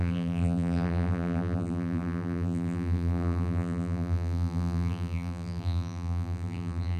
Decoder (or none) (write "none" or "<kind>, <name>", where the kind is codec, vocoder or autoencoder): vocoder, BigVGAN v2